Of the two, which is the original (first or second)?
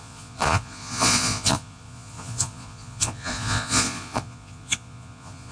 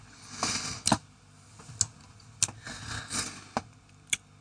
second